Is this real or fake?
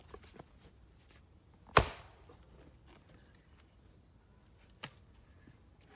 real